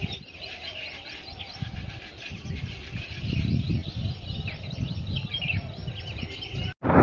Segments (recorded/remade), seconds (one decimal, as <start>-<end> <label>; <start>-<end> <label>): 0.0-0.8 remade; 0.8-1.4 recorded; 1.4-5.8 remade; 5.8-7.0 recorded